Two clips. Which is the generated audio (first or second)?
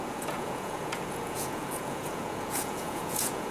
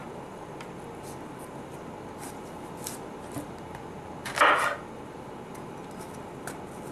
first